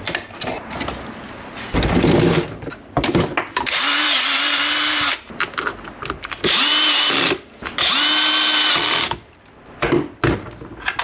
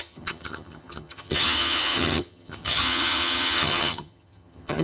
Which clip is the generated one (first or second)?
second